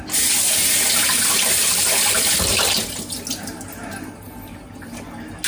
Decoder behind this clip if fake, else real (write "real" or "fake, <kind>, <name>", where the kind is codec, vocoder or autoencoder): real